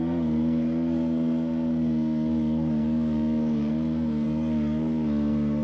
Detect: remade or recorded remade